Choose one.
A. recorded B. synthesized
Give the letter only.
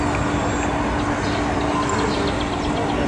A